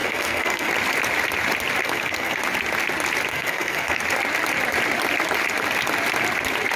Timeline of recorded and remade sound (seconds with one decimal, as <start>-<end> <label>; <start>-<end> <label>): 0.0-0.7 remade; 0.7-1.8 recorded; 1.8-2.4 remade; 2.4-3.3 recorded; 3.3-4.0 remade; 4.0-6.8 recorded